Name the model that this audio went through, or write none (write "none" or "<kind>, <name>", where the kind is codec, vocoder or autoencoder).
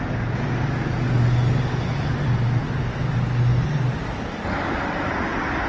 none